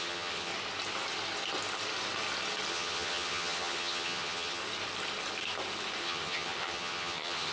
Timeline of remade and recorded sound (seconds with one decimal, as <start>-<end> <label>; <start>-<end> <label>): 0.0-0.5 remade; 0.5-2.7 recorded; 2.7-4.6 remade; 4.6-6.0 recorded; 6.0-7.5 remade